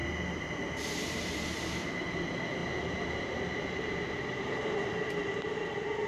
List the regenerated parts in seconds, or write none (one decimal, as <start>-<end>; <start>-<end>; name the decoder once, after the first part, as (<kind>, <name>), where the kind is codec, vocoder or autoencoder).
0.0-1.4 (vocoder, BigVGAN v2); 2.6-3.9; 5.2-6.1

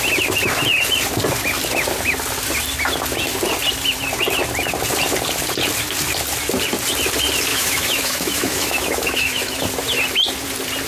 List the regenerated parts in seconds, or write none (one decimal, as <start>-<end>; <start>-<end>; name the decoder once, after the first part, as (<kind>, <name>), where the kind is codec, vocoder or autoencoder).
7.5-9.6 (autoencoder, DAC-VAE)